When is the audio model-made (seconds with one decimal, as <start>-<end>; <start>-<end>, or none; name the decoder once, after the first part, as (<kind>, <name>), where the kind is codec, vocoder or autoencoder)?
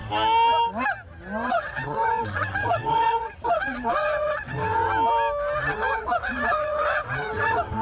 1.5-4.8 (vocoder, WaveNeXt); 5.7-7.8